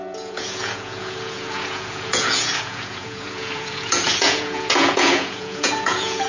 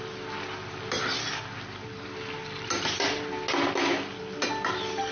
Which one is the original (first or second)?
second